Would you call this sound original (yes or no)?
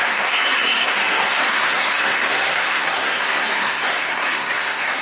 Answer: no